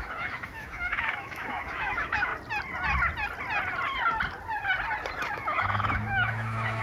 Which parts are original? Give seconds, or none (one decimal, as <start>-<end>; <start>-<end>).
2.3-5.3